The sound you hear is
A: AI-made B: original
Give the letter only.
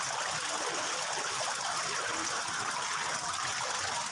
B